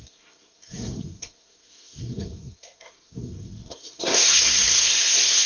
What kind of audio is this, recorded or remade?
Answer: remade